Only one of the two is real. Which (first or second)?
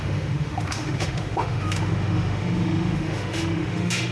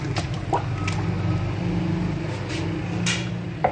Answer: second